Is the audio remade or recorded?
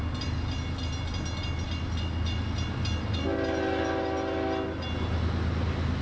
recorded